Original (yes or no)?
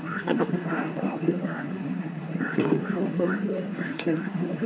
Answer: no